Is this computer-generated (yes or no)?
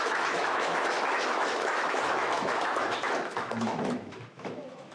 yes